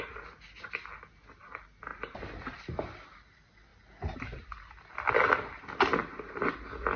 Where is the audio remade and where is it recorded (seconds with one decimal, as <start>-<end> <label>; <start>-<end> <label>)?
0.0-7.0 recorded